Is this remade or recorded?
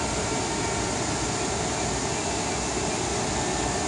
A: recorded